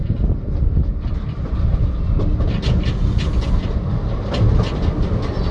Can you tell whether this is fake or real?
real